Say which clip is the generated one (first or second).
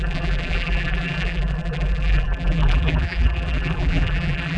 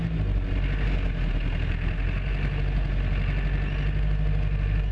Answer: first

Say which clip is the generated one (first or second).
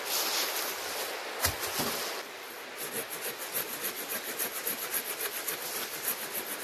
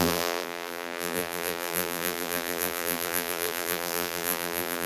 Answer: second